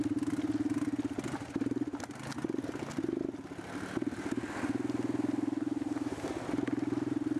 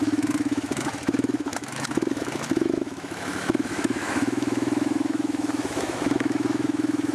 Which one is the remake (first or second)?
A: second